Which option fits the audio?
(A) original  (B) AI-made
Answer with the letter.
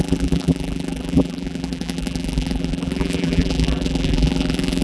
B